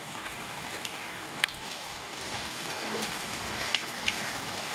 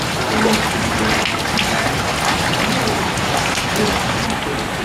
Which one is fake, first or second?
first